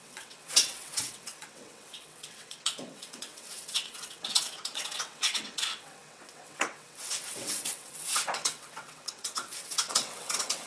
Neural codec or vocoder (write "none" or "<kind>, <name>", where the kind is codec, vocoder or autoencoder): vocoder, WaveNeXt